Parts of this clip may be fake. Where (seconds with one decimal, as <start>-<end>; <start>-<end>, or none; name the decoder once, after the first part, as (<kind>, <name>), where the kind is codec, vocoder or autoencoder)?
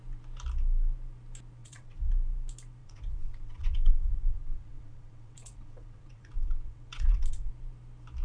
1.6-2.1 (vocoder, WaveNeXt); 2.8-7.5